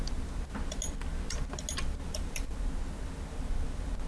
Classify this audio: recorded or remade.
recorded